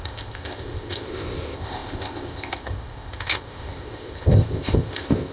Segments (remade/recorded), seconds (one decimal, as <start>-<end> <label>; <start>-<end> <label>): 0.0-5.3 remade